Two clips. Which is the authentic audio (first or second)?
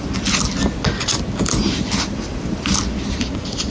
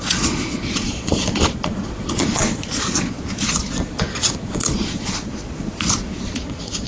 first